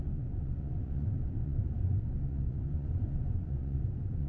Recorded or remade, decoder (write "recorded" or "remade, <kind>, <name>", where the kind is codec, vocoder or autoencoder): remade, vocoder, Vocos